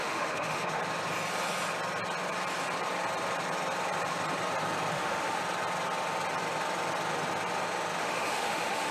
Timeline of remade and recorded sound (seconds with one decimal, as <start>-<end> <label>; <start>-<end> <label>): 0.0-0.8 remade; 0.8-4.9 recorded; 4.9-5.4 remade; 5.4-8.0 recorded; 8.0-8.9 remade